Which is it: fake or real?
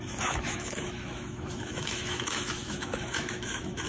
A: fake